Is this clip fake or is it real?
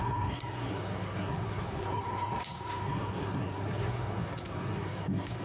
fake